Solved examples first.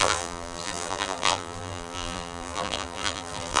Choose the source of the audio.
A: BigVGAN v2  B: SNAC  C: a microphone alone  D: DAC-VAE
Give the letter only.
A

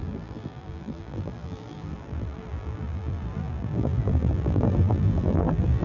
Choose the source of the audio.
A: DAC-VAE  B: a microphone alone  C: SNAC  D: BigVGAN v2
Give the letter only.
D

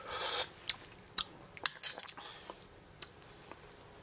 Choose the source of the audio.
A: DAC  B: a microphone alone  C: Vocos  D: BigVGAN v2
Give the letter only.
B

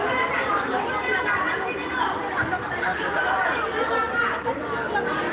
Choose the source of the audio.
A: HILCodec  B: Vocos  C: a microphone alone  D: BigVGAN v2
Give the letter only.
C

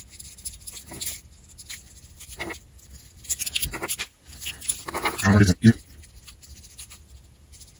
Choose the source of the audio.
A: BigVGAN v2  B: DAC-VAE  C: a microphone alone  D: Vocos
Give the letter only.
C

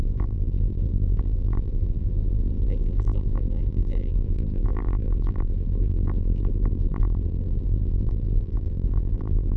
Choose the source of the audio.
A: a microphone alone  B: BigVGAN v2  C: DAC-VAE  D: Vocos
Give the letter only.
B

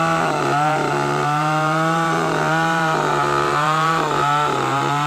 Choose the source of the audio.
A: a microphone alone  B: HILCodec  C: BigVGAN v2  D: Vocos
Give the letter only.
C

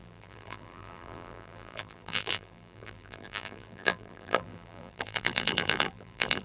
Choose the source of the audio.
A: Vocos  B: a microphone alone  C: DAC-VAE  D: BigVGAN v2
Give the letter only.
D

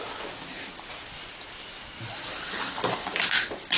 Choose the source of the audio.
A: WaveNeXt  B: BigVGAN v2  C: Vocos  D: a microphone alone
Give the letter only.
D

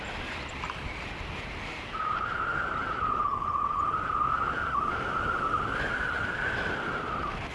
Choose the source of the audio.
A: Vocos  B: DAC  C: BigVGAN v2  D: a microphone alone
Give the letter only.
D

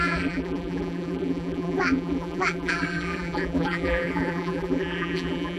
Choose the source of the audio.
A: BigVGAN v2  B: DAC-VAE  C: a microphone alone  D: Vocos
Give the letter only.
A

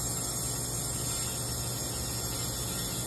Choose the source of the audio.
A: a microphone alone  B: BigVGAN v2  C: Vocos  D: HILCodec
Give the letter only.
A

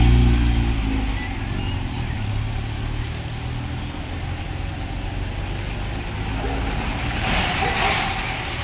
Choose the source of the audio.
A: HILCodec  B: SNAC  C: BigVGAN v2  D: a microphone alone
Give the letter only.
D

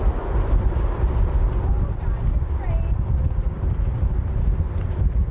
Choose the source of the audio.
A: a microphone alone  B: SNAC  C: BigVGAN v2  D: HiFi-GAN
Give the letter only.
C